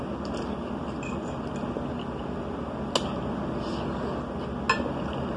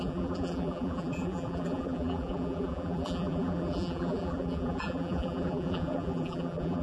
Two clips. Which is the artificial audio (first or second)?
second